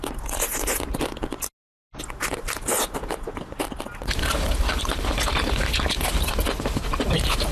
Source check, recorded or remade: recorded